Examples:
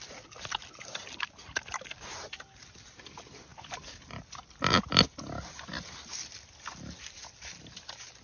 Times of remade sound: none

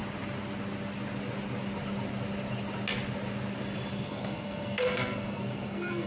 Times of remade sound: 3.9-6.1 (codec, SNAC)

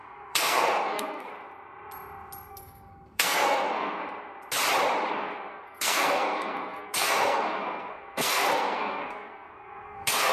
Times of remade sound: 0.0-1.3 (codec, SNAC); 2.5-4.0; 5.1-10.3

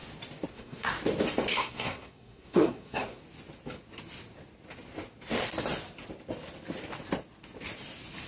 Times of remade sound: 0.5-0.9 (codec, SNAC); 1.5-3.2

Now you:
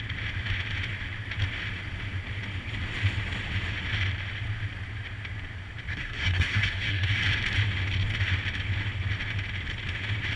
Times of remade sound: 5.9-7.1 (codec, SNAC)

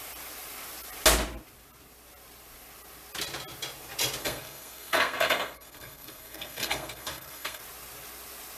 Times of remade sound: 4.2-7.6 (codec, SNAC)

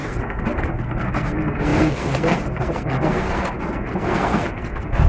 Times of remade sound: 0.0-5.1 (codec, SNAC)